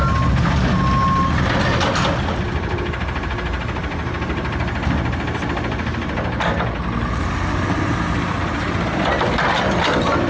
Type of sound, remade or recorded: recorded